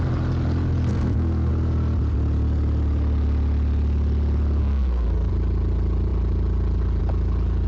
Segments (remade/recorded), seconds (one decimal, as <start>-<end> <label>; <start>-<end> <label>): 0.0-0.9 recorded; 0.9-1.5 remade; 1.5-4.6 recorded; 4.6-5.3 remade; 5.3-7.7 recorded